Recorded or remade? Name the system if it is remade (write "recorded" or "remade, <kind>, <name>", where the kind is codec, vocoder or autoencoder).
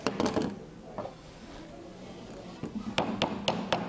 recorded